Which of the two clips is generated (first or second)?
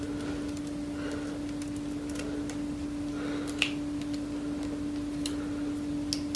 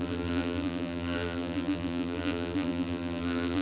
second